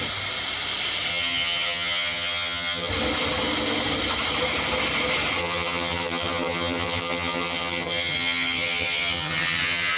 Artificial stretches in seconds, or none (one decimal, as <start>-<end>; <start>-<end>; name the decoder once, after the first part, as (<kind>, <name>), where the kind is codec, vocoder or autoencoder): 1.1-2.9 (vocoder, HiFi-GAN); 5.4-10.0